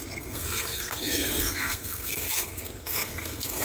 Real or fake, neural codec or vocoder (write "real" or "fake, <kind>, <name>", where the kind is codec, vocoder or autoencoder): fake, codec, SNAC